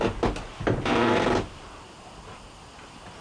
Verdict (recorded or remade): recorded